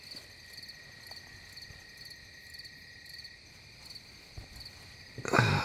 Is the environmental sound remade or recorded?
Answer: recorded